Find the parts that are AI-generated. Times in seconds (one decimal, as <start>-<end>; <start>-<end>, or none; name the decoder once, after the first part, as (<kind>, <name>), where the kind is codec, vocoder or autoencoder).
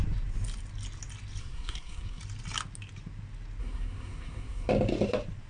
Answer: 1.4-2.2 (codec, SNAC); 3.6-4.7